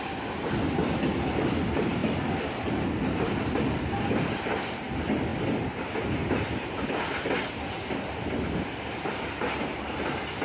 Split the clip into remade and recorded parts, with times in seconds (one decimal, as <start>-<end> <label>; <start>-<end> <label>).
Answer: 0.0-2.0 remade; 2.0-4.1 recorded; 4.1-5.3 remade; 5.3-7.4 recorded; 7.4-10.4 remade